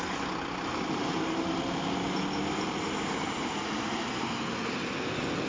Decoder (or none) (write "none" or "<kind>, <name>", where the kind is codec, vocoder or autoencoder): none